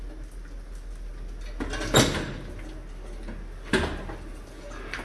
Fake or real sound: real